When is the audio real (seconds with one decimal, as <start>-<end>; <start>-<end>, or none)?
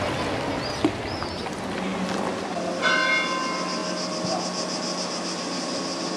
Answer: 0.0-6.2